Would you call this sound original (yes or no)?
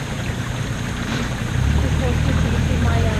no